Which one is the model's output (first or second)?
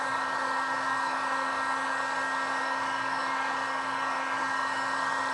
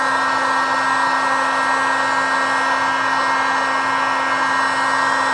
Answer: first